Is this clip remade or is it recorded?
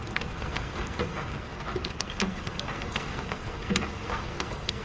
remade